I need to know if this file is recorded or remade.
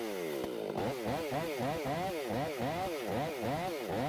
recorded